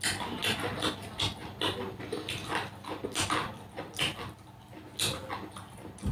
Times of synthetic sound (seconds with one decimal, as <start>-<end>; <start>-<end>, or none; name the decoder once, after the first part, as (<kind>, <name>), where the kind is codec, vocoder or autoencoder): none